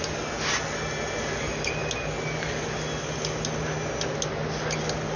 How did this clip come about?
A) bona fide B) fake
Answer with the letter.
A